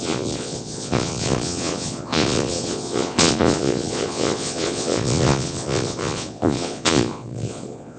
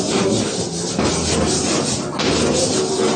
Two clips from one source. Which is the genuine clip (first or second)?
second